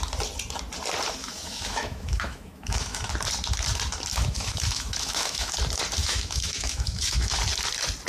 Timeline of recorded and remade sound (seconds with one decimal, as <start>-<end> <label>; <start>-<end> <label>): 0.0-1.2 recorded; 1.2-3.1 remade; 3.1-4.1 recorded; 4.1-5.5 remade; 5.5-6.0 recorded; 6.0-7.4 remade; 7.4-8.1 recorded